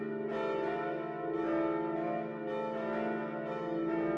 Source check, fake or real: real